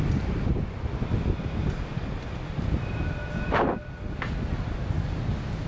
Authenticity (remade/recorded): recorded